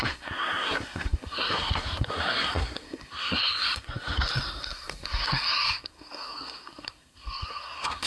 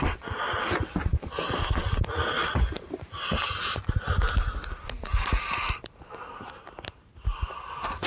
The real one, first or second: second